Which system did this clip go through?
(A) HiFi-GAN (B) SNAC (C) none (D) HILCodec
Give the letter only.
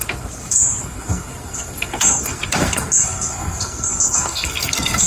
B